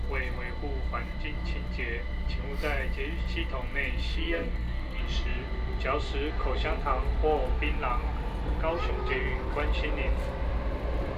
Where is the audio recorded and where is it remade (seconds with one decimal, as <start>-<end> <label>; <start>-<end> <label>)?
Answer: 0.0-4.1 recorded; 4.1-5.0 remade; 5.0-11.2 recorded